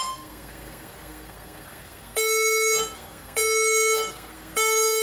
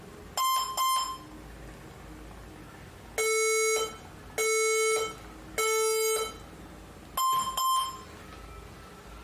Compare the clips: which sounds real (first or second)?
second